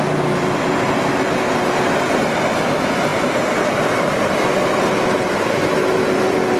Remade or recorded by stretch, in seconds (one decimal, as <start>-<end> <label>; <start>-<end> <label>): 0.0-6.6 recorded